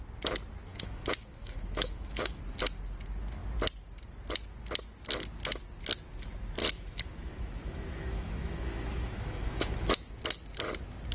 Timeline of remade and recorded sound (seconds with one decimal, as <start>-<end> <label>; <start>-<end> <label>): 0.0-0.7 recorded; 0.7-2.4 remade; 2.4-6.6 recorded; 6.6-10.1 remade; 10.1-11.1 recorded